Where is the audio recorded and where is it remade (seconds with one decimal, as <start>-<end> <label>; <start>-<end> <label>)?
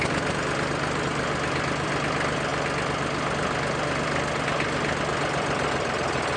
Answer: 0.0-6.4 recorded